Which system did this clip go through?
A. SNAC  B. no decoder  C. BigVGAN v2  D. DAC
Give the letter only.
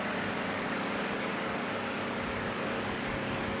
D